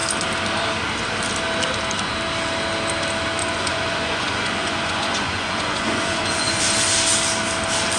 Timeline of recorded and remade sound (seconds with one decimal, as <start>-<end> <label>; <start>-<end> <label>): 0.0-3.4 recorded; 3.4-6.6 remade; 6.6-8.0 recorded